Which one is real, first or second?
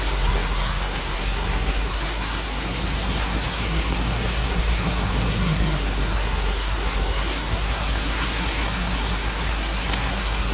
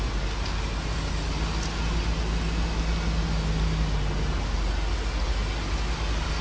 second